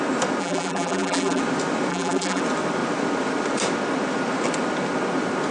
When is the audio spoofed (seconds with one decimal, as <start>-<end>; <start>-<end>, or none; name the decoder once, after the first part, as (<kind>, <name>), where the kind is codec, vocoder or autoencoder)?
0.4-1.4 (vocoder, BigVGAN v2); 1.9-2.4